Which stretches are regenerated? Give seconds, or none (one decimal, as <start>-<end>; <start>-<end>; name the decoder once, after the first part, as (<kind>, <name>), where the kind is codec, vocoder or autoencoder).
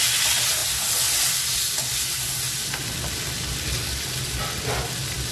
none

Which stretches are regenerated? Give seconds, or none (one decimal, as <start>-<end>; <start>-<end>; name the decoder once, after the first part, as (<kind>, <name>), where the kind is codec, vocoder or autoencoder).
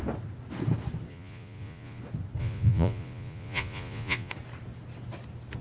1.1-2.0 (vocoder, Vocos); 2.4-4.3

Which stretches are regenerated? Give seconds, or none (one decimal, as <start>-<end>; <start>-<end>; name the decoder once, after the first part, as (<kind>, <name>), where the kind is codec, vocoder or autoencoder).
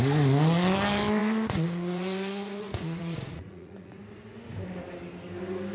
1.2-4.0 (vocoder, Vocos)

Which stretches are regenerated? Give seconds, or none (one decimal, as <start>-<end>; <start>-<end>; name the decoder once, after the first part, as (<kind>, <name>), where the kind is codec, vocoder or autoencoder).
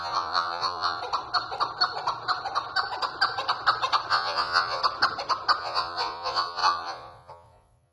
0.0-1.0 (vocoder, Vocos); 4.1-4.8; 5.6-7.9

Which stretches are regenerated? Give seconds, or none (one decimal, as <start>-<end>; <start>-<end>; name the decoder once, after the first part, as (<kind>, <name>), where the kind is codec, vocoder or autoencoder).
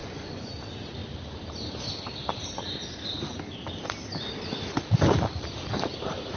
0.0-0.5 (vocoder, Vocos)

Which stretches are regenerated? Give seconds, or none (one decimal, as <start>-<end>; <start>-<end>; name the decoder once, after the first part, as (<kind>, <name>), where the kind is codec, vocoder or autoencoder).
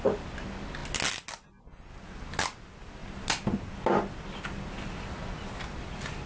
none